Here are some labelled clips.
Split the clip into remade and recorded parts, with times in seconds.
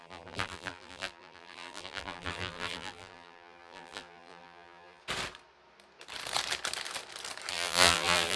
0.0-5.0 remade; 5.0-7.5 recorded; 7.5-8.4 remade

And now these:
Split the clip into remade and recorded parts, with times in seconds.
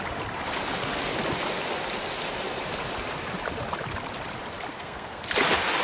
0.0-4.7 recorded; 4.7-5.2 remade; 5.2-5.8 recorded